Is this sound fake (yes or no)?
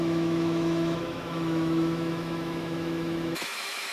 yes